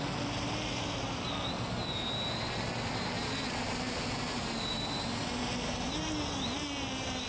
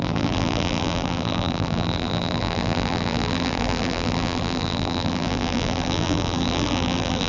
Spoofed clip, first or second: second